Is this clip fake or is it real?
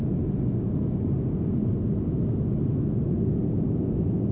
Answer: real